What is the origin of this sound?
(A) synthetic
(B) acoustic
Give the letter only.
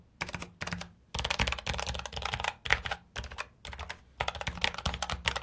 B